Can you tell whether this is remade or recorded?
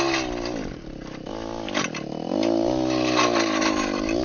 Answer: recorded